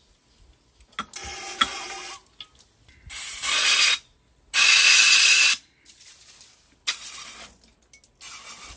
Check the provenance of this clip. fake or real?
real